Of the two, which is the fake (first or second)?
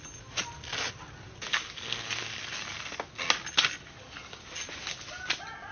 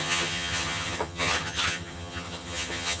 second